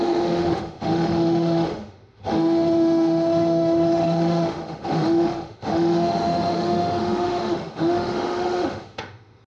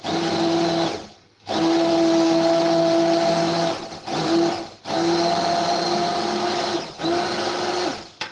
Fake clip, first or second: first